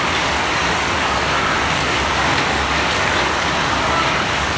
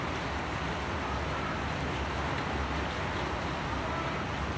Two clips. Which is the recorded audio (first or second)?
second